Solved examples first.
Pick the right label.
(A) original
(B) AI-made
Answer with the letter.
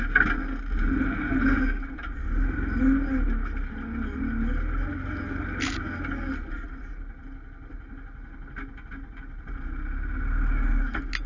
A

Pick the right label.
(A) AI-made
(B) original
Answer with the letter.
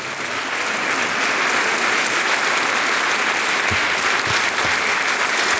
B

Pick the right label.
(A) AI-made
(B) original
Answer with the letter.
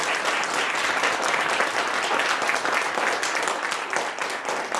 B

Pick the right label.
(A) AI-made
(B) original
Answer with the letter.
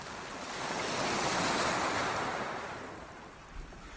B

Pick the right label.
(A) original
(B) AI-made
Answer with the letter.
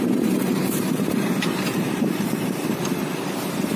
B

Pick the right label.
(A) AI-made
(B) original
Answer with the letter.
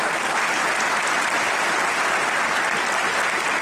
B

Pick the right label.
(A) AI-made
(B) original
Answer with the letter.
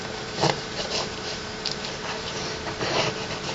A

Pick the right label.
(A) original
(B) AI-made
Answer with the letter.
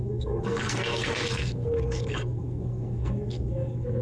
B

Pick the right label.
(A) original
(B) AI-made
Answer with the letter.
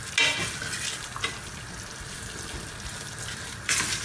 A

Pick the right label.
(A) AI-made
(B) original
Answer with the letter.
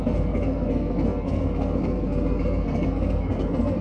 A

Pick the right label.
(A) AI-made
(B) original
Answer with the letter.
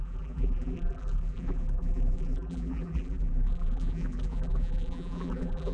A